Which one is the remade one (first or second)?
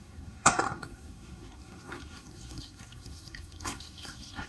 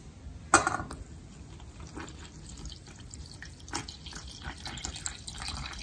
first